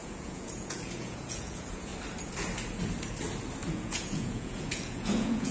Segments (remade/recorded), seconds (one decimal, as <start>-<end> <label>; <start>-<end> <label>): 0.0-1.9 remade; 1.9-3.7 recorded; 3.7-5.5 remade